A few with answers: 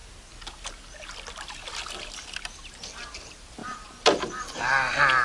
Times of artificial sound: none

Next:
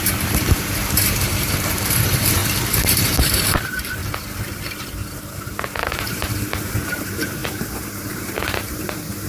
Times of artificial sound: 0.0-2.4 (vocoder, BigVGAN v2); 2.9-4.0; 5.1-9.3

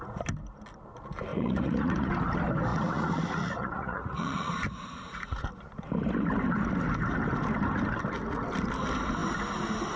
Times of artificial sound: 1.3-2.1 (vocoder, Vocos); 2.7-5.5